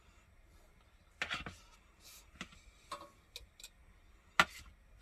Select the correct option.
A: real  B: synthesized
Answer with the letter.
A